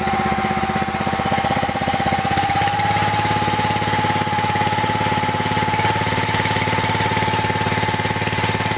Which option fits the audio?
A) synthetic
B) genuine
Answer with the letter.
B